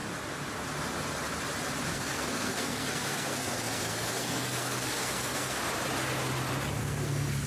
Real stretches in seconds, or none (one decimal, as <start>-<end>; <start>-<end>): 0.0-1.9; 5.6-6.8